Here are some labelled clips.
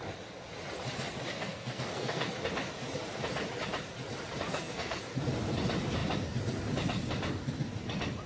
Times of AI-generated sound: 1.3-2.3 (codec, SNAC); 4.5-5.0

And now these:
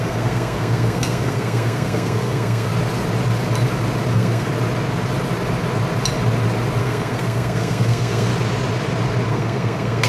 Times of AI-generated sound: 0.0-2.7 (codec, SNAC); 4.1-4.5; 6.8-8.3; 9.3-10.1

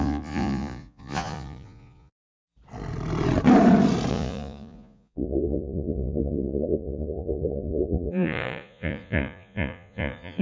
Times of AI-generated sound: 0.0-2.2 (vocoder, Vocos); 4.1-10.4

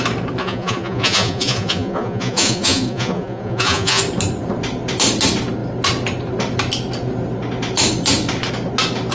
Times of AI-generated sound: 0.4-4.0 (vocoder, Vocos)

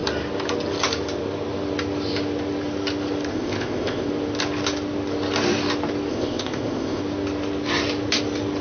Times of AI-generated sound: 3.3-4.1 (codec, ZipCodec); 6.1-7.0

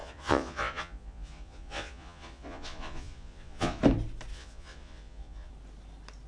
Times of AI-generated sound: 0.0-3.8 (vocoder, Vocos); 4.3-5.5

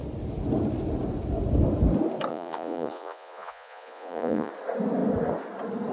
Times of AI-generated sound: 2.3-4.5 (vocoder, Vocos)

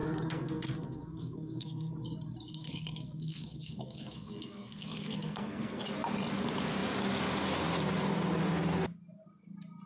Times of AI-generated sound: 0.0-1.9 (codec, SNAC); 2.5-5.8